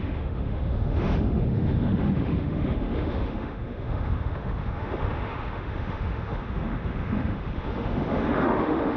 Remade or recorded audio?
remade